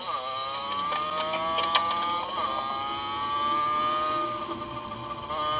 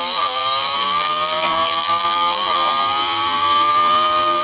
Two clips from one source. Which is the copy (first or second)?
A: second